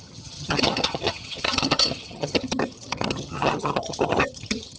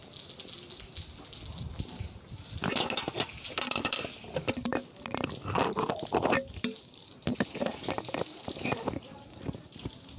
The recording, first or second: second